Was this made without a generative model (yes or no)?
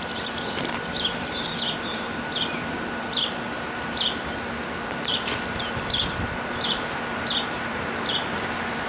no